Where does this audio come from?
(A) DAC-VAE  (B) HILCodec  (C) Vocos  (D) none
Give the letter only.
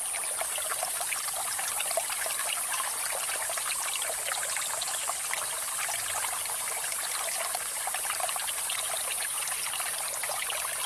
D